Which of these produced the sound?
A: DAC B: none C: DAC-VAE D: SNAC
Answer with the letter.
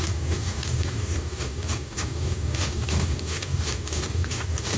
A